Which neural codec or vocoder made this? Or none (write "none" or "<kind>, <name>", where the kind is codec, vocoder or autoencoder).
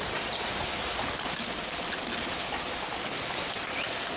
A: none